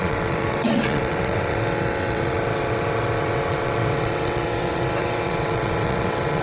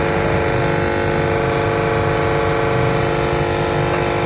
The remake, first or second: first